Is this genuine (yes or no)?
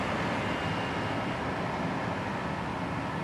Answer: yes